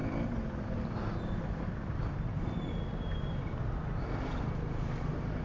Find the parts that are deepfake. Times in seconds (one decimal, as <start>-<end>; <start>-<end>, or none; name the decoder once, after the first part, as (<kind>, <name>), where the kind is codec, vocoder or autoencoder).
none